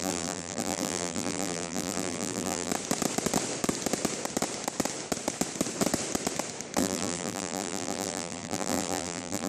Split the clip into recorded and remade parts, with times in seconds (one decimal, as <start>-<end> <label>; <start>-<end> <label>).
0.0-2.7 remade; 2.7-6.8 recorded; 6.8-9.5 remade